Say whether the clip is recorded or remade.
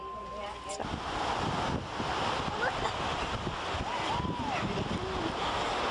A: recorded